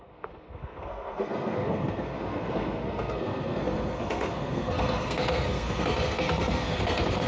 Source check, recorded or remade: remade